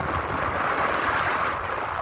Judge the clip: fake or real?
real